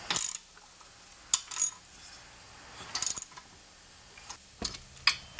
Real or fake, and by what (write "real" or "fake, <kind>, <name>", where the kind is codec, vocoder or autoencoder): real